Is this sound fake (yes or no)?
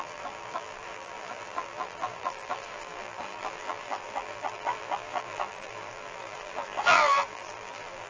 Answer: yes